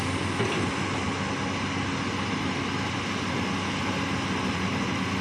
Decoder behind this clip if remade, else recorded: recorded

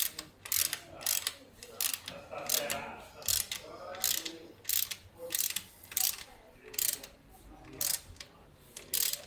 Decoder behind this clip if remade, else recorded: recorded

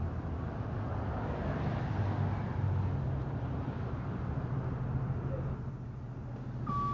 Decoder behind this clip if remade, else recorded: recorded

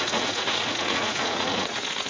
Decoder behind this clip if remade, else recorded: remade, vocoder, Vocos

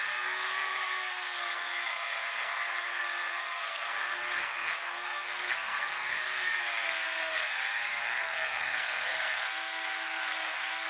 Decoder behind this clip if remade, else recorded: remade, codec, SNAC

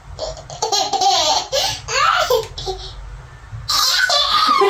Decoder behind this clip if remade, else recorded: recorded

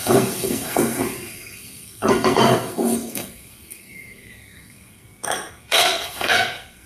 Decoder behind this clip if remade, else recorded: remade, codec, SNAC